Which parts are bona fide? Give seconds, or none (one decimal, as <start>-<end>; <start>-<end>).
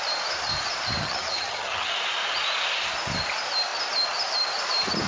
0.0-1.0; 1.9-5.1